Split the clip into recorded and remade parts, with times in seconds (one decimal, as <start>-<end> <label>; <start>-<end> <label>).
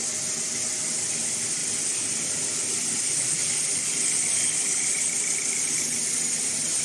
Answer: 0.0-6.8 recorded